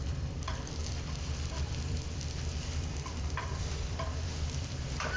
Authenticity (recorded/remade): remade